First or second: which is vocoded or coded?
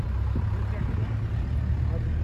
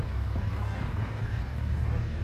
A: second